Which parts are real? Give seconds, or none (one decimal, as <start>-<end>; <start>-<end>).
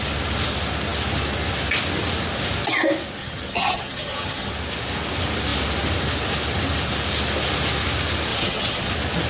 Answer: 0.0-3.2; 4.5-8.3; 8.9-9.3